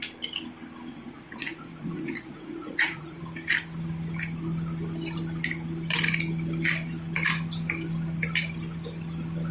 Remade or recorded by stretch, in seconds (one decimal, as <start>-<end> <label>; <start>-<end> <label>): 0.0-0.9 recorded; 0.9-3.2 remade; 3.2-9.5 recorded